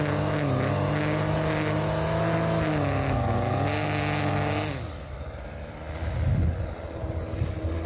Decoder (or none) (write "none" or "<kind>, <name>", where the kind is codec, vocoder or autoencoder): none